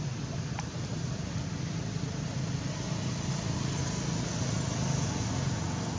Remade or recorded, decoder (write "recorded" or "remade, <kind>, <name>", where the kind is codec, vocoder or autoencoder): recorded